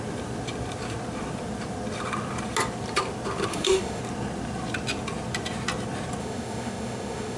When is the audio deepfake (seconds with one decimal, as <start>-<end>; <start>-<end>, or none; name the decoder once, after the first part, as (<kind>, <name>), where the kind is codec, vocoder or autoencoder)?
3.5-4.0 (autoencoder, DAC-VAE); 6.2-7.4